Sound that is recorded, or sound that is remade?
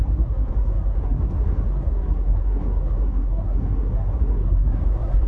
remade